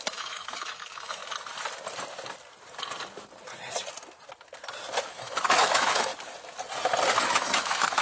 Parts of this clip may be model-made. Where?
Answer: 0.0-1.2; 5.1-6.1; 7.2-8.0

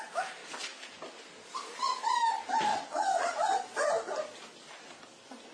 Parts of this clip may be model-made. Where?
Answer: 2.7-3.7

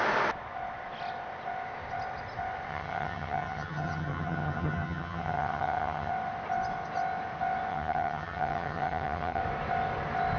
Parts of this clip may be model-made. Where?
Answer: 2.7-6.1; 7.7-9.4

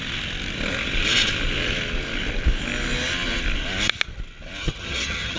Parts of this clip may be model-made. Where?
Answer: 4.6-5.4

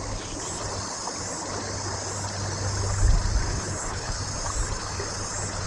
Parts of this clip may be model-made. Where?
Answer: 3.5-4.2

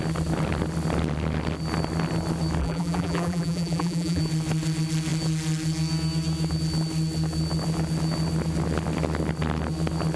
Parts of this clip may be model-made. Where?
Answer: 2.6-4.2